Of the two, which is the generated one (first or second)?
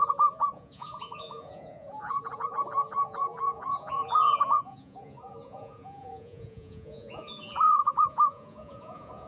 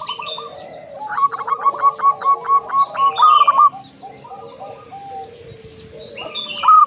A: first